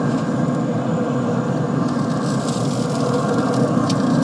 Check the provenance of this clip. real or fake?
real